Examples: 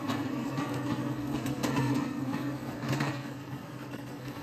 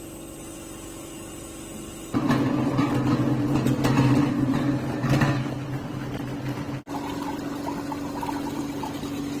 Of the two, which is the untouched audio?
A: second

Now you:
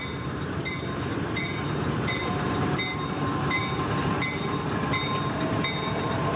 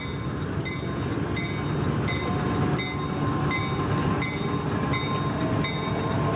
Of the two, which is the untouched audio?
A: second